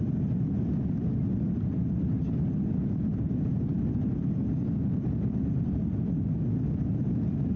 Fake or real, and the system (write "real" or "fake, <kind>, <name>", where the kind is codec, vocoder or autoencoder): real